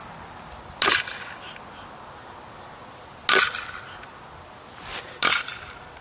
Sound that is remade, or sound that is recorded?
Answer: recorded